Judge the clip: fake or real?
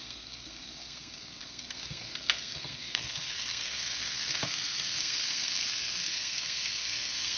fake